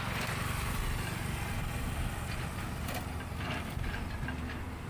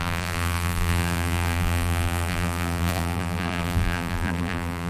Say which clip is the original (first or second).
first